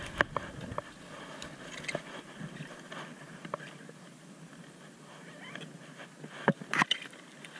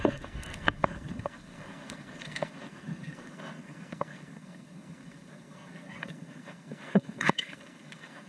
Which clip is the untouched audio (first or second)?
first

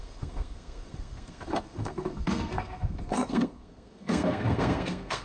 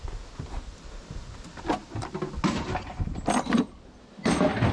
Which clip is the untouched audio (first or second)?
second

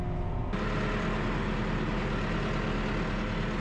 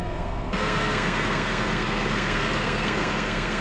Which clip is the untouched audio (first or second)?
first